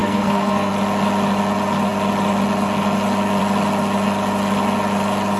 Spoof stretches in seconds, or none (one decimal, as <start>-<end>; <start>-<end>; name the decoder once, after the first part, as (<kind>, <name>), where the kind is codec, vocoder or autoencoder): 0.0-0.7 (codec, SNAC)